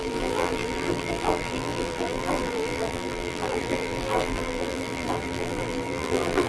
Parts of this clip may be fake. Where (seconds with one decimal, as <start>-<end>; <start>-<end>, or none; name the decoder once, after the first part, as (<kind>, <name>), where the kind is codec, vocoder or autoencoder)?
0.0-6.5 (vocoder, BigVGAN v2)